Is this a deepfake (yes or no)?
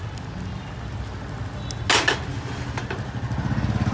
no